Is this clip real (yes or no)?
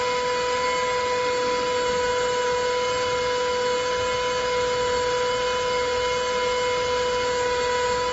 yes